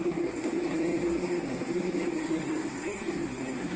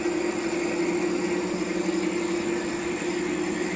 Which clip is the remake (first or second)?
first